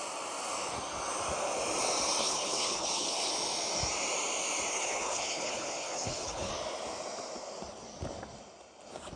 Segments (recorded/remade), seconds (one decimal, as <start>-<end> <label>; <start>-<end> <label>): 0.0-2.2 recorded; 2.2-3.3 remade; 3.3-4.7 recorded; 4.7-6.5 remade; 6.5-9.2 recorded